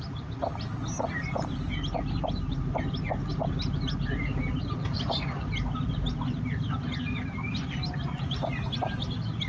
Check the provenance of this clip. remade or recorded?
recorded